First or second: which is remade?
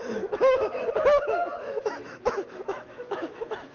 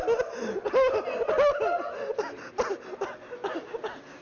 first